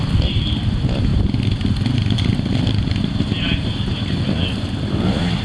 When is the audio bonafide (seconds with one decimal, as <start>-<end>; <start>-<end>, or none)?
0.0-1.1; 4.2-5.4